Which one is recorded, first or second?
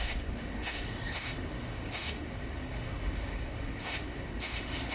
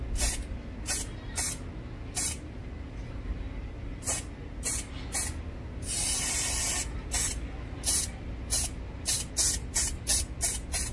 second